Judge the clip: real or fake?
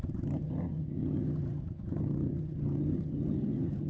fake